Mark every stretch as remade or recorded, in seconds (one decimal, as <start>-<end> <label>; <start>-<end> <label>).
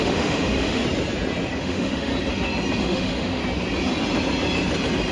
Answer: 0.0-0.8 remade; 0.8-1.6 recorded; 1.6-2.1 remade; 2.1-2.8 recorded; 2.8-3.4 remade; 3.4-5.1 recorded